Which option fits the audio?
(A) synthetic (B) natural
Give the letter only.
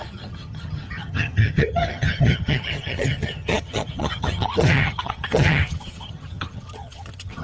A